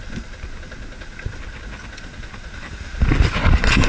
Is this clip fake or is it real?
real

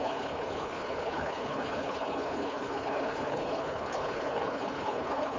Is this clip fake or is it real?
fake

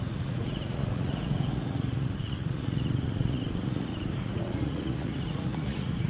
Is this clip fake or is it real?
fake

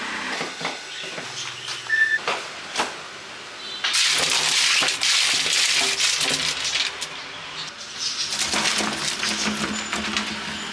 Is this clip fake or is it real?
real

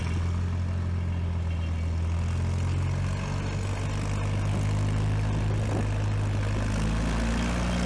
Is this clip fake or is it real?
real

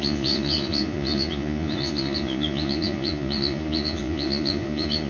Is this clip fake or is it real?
fake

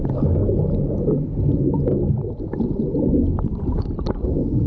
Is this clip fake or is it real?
real